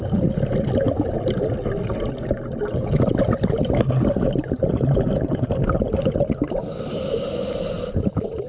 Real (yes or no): yes